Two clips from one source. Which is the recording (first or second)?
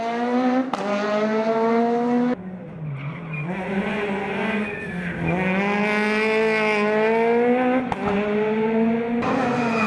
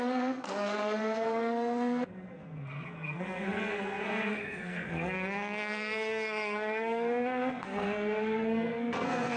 first